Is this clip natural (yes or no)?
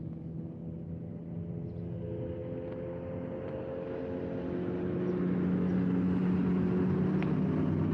yes